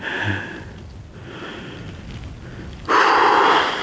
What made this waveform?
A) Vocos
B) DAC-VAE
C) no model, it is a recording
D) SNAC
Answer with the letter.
C